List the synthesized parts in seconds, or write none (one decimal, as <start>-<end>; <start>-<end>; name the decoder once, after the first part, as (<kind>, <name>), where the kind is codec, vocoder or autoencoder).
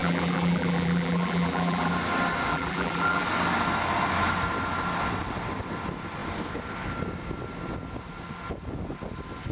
0.0-1.9 (vocoder, BigVGAN v2); 2.5-3.2